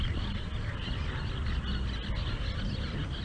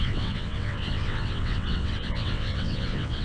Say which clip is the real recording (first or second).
first